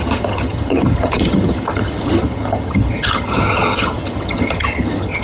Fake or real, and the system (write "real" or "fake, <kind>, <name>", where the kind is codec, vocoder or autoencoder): fake, vocoder, HiFi-GAN